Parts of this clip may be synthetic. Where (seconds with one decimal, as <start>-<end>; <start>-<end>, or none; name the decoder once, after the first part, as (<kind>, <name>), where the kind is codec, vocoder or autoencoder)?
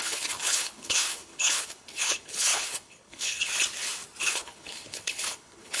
0.0-3.5 (codec, HILCodec); 4.2-5.8